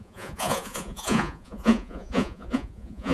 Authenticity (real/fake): fake